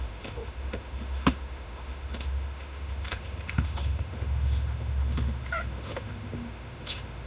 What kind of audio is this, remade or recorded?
remade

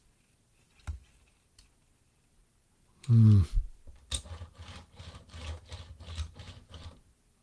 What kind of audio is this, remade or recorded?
recorded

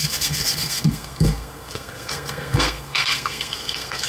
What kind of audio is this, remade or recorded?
remade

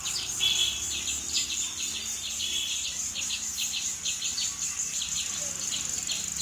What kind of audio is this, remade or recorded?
recorded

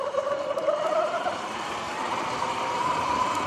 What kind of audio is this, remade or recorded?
remade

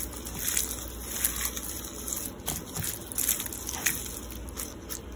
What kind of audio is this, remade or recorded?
recorded